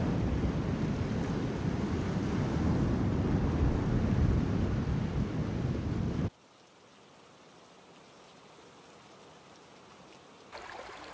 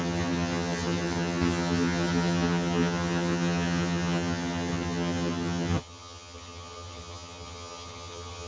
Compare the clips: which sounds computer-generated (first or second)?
second